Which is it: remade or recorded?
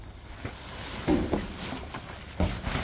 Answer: recorded